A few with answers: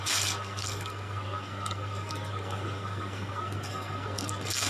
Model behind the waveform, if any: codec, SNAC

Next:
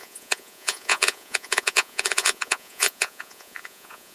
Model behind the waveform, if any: vocoder, Vocos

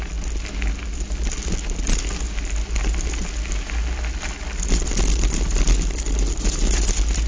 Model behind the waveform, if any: none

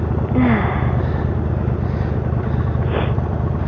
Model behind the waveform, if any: none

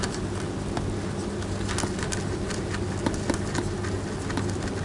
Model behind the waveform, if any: none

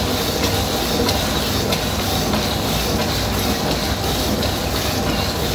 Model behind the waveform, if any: none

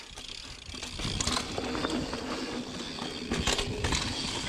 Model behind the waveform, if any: none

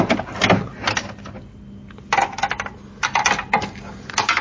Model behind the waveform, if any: none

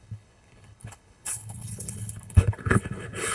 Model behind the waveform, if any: codec, HILCodec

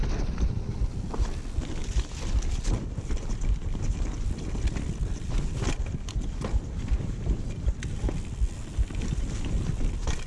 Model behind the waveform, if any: none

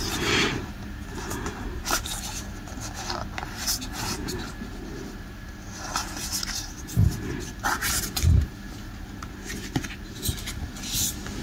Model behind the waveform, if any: none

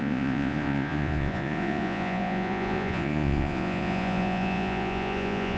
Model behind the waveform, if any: vocoder, Vocos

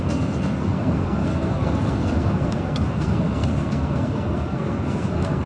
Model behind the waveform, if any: codec, SNAC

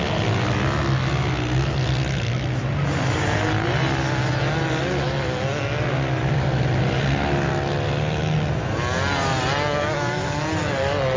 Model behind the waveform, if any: none